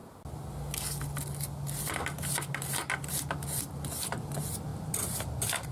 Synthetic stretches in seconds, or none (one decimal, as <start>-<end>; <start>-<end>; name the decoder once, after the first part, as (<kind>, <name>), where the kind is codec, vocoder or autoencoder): 3.4-5.7 (vocoder, BigVGAN v2)